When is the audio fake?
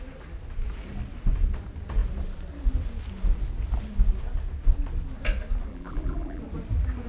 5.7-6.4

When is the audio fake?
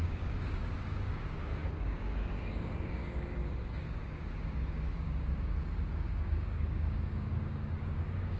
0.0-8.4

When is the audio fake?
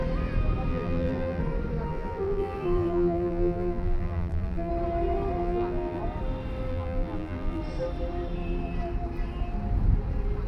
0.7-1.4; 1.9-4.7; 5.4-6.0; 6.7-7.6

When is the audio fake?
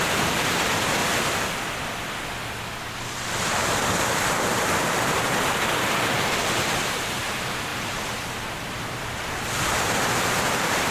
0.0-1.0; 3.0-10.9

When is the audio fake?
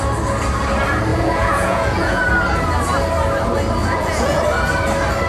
1.1-2.2; 3.8-4.4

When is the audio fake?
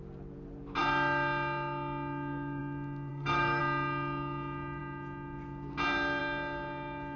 3.1-3.6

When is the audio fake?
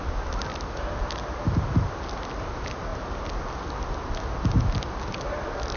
none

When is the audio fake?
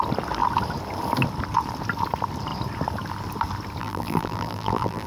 3.8-5.1